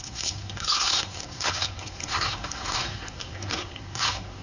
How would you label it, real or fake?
fake